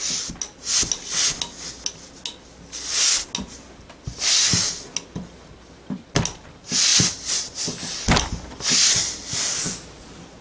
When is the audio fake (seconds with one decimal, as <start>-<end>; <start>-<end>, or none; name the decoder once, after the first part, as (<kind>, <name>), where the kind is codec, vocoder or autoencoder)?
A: none